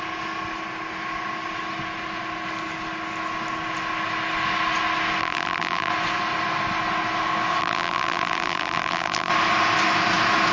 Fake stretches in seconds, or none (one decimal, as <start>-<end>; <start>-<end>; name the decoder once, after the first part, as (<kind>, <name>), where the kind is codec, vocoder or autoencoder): 5.2-5.9 (vocoder, BigVGAN v2); 7.6-9.3